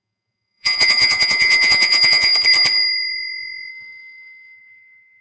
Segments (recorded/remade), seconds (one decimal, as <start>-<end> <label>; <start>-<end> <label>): 0.0-2.3 remade; 2.3-3.7 recorded; 3.7-5.2 remade